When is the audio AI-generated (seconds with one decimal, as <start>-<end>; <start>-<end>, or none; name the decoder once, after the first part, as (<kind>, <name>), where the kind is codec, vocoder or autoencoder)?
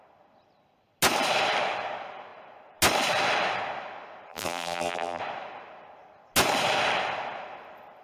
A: 4.3-5.2 (vocoder, BigVGAN v2)